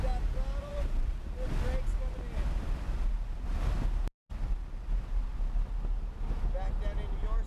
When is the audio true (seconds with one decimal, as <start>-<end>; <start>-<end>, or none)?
0.0-0.7; 1.3-7.5